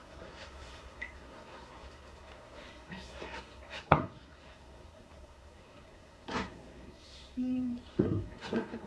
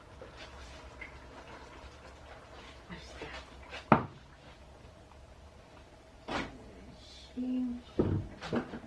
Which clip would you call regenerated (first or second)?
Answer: first